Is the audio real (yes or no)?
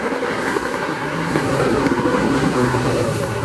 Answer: no